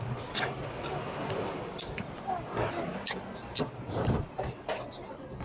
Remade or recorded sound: recorded